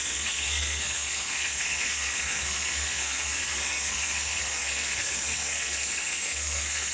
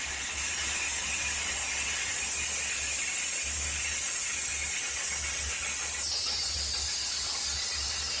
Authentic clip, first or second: second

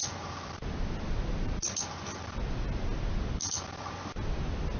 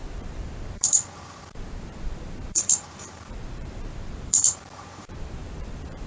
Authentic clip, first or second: first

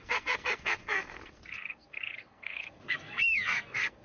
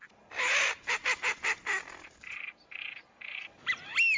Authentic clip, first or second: second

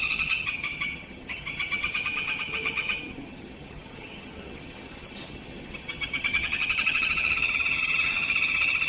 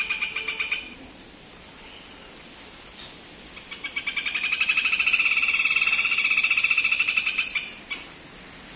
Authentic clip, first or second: second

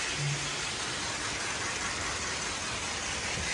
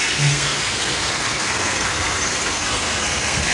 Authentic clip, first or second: first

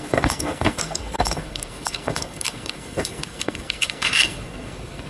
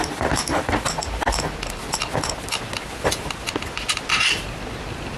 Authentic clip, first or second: second